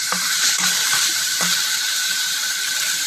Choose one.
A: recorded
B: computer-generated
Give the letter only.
B